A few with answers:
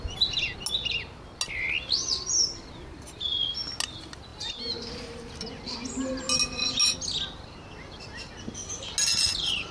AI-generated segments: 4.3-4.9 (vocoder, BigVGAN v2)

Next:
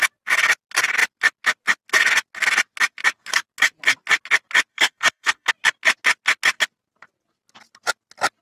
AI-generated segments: 4.7-5.5 (codec, SNAC)

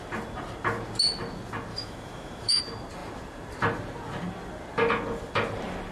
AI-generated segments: 1.7-2.6 (autoencoder, DAC-VAE)

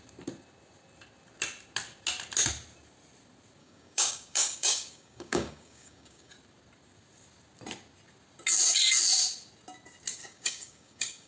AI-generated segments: 3.6-6.3 (codec, DAC); 10.2-11.3

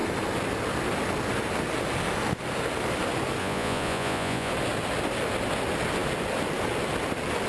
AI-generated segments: 3.4-4.5 (vocoder, Vocos)

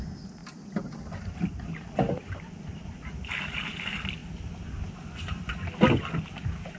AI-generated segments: none

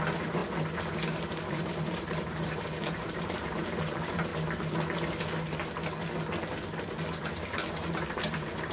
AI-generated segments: 0.0-0.4 (vocoder, BigVGAN v2); 1.5-4.3; 7.7-8.7

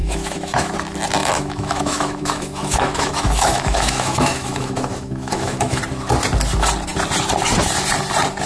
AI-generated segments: 0.0-0.7 (autoencoder, DAC-VAE); 1.2-5.8